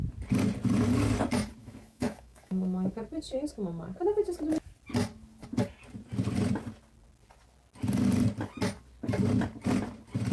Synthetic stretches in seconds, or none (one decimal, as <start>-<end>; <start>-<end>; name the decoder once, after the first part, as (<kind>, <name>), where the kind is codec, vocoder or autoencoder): 1.6-3.0 (autoencoder, DAC-VAE)